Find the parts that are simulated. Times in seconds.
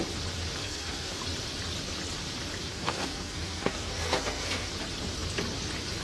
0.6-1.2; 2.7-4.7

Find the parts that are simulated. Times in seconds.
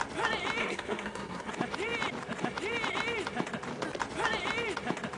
0.6-1.5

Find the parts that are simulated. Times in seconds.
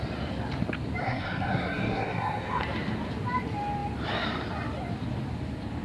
1.0-2.6